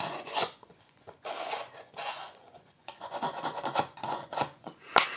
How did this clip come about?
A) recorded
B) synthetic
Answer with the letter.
B